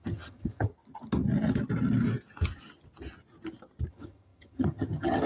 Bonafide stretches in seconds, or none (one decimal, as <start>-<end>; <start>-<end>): 0.7-3.9